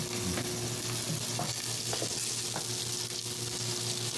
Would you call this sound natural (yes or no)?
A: yes